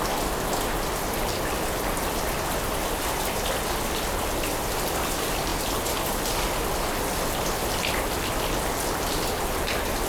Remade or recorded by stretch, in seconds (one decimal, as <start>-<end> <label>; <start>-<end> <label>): 0.0-10.1 recorded